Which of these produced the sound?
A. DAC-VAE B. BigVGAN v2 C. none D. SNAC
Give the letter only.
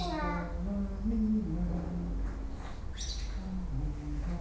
C